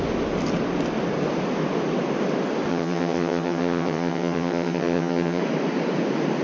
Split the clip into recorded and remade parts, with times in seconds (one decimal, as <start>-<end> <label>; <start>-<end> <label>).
0.0-2.7 recorded; 2.7-5.4 remade; 5.4-6.4 recorded